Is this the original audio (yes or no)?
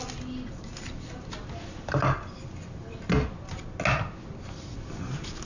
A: yes